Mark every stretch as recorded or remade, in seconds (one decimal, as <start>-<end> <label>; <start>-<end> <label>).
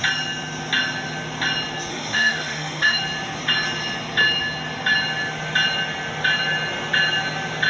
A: 0.0-1.9 recorded; 1.9-3.0 remade; 3.0-7.7 recorded